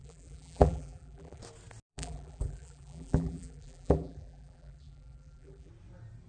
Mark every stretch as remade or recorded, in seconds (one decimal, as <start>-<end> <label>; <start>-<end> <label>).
0.0-1.4 remade; 1.4-1.9 recorded; 1.9-5.7 remade; 5.7-6.3 recorded